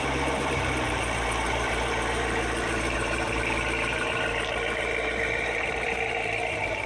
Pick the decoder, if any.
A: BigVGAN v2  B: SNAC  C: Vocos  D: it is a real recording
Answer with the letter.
A